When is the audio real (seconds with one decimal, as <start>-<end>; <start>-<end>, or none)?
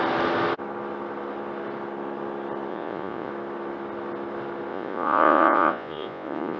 0.0-2.7; 3.3-4.7